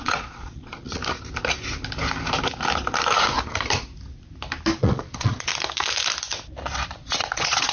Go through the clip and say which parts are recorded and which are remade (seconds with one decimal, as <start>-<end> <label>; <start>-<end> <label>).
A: 0.0-1.0 remade; 1.0-4.8 recorded; 4.8-5.5 remade; 5.5-7.0 recorded; 7.0-7.7 remade